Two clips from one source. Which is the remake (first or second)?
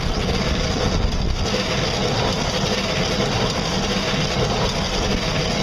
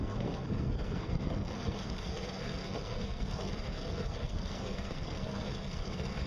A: second